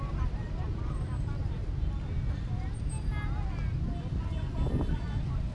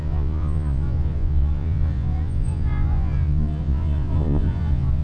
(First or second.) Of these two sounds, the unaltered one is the first